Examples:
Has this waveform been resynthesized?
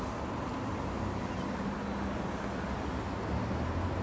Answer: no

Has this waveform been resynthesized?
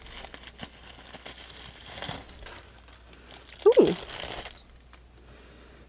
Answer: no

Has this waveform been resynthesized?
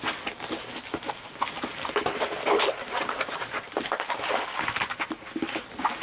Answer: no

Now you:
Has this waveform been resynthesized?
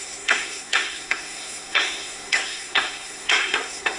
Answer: yes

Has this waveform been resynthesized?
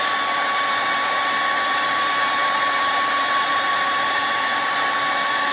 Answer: yes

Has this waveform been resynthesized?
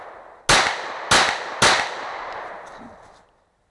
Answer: no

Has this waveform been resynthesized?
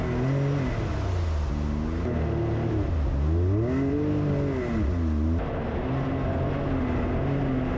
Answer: no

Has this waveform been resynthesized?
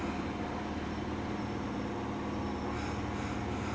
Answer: no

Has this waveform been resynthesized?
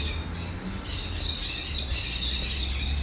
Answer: no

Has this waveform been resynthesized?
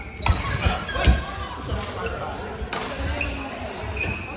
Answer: no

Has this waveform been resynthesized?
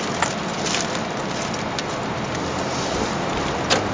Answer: no